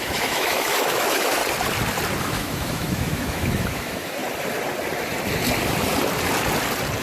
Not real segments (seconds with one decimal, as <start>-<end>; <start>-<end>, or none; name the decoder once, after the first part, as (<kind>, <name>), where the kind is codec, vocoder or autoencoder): 0.0-1.4 (autoencoder, DAC-VAE); 2.2-4.2